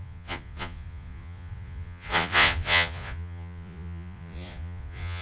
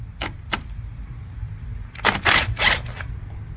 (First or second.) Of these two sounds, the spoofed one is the first